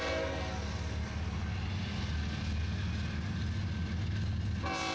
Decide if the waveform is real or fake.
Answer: real